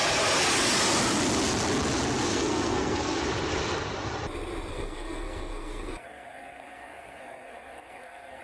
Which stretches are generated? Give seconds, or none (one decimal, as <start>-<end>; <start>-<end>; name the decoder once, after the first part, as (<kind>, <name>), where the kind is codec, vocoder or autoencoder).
2.3-3.2 (codec, SNAC); 4.7-8.4